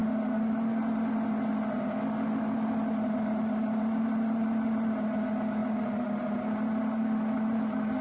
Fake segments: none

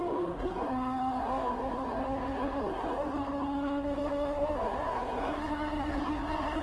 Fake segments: 0.0-6.6 (codec, SNAC)

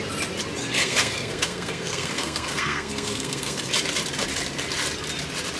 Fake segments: 0.6-3.7 (codec, SNAC)

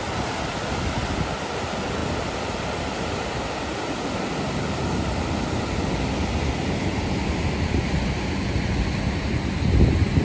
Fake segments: none